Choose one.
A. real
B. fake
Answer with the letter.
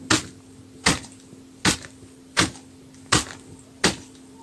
A